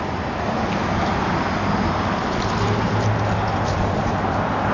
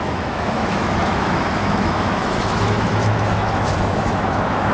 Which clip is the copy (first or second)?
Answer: second